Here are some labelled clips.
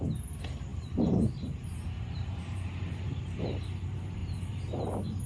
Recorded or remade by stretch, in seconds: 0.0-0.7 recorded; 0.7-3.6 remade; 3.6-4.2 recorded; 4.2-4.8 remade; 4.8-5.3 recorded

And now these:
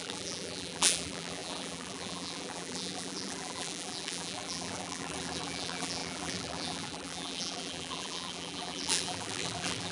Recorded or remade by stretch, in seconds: 0.0-9.9 remade

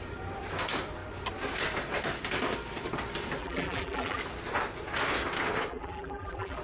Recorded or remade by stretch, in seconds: 0.0-3.4 recorded; 3.4-4.2 remade; 4.2-5.7 recorded; 5.7-6.6 remade

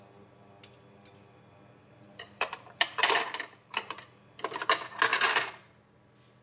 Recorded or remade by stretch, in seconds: 0.0-1.8 recorded; 1.8-4.0 remade; 4.0-5.1 recorded; 5.1-5.8 remade; 5.8-6.4 recorded